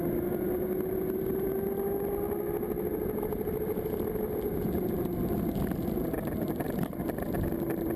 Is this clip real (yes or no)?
yes